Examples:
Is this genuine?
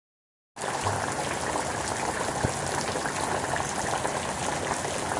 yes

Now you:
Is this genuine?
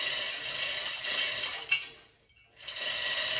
yes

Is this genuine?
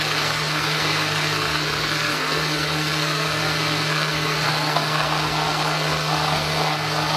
no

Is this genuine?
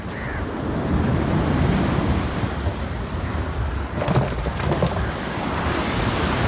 no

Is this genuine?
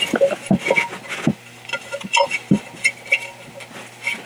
yes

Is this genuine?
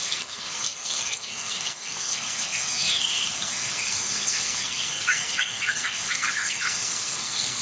no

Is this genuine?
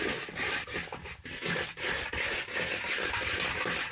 yes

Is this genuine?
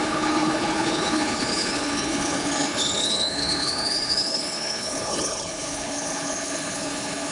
no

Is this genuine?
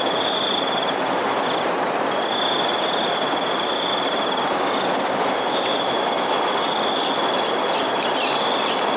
yes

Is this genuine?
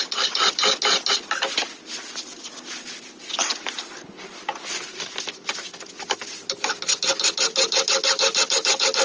yes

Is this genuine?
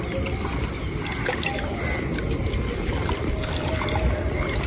yes